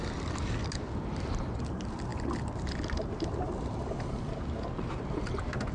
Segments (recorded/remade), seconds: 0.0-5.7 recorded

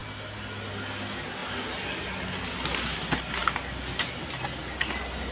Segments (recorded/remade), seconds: 0.0-5.3 recorded

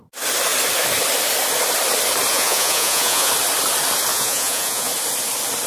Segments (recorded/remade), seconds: 0.0-2.3 recorded; 2.3-3.3 remade; 3.3-4.1 recorded; 4.1-4.9 remade; 4.9-5.7 recorded

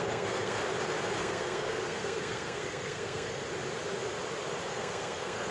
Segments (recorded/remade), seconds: 0.0-0.6 remade; 0.6-1.2 recorded; 1.2-3.4 remade; 3.4-4.7 recorded; 4.7-5.5 remade

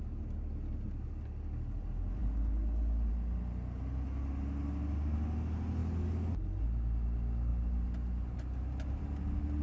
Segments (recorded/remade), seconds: 0.0-9.6 recorded